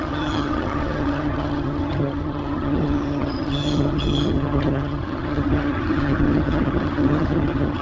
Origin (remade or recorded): remade